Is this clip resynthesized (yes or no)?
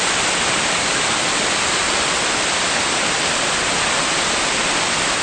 no